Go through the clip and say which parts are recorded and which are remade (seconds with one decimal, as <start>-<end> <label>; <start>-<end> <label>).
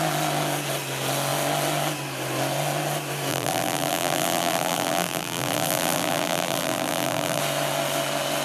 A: 0.0-3.3 recorded; 3.3-7.4 remade; 7.4-8.4 recorded